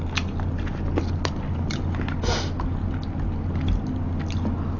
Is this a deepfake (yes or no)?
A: no